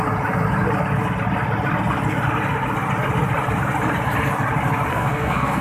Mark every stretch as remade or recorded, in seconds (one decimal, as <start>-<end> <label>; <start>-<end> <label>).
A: 0.0-4.9 recorded; 4.9-5.6 remade